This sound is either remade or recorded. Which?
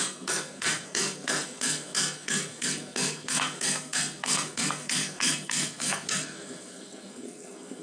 remade